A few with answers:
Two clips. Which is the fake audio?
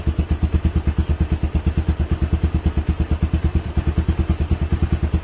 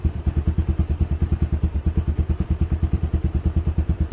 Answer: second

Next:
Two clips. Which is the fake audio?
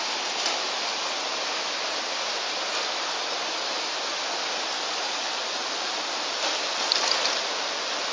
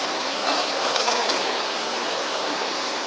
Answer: second